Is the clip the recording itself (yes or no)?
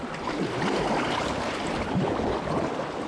yes